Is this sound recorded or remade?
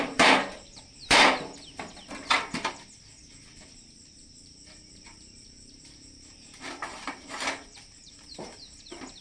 remade